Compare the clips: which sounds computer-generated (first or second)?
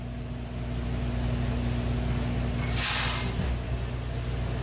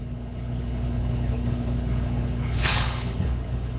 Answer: second